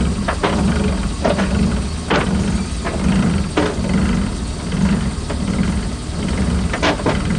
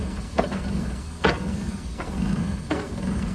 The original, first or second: first